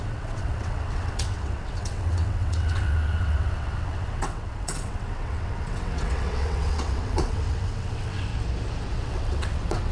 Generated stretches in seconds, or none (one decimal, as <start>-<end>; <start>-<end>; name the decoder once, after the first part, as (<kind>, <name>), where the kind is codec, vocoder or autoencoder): 0.0-8.3 (vocoder, WaveNeXt); 8.9-9.9